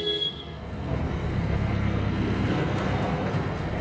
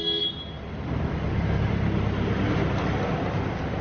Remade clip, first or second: first